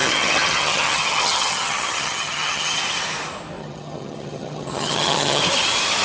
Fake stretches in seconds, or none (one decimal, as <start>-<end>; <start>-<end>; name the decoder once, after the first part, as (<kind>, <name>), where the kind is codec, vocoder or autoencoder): 0.0-2.8 (vocoder, HiFi-GAN); 3.6-5.4